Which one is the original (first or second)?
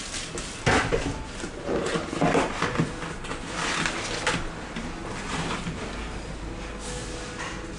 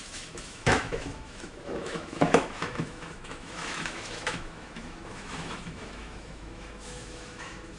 first